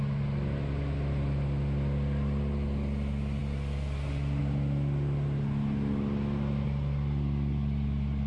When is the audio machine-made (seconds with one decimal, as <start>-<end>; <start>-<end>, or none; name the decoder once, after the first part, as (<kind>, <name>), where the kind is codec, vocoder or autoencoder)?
none